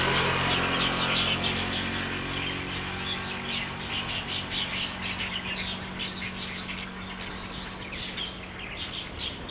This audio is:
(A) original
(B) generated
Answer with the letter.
A